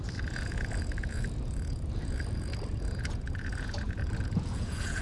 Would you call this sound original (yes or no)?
no